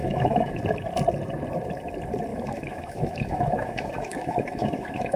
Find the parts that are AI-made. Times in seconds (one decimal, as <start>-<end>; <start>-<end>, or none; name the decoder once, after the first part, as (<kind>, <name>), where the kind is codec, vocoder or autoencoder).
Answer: 0.0-0.6 (autoencoder, DAC-VAE); 2.3-5.2